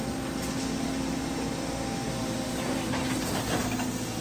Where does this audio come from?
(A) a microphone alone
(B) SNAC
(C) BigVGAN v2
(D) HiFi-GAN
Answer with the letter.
A